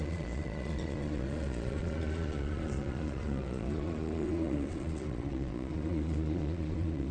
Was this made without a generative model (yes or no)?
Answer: no